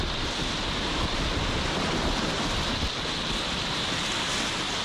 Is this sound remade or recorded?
recorded